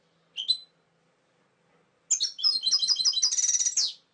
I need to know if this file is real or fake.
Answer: real